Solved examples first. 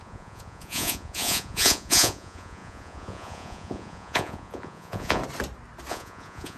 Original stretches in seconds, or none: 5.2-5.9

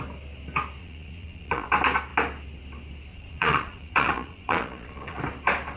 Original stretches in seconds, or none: 0.0-0.8; 1.7-3.1; 5.2-5.8

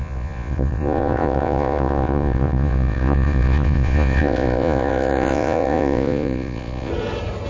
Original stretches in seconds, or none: 6.9-7.5

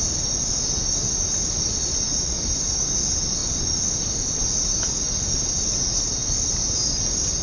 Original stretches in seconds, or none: 0.0-7.4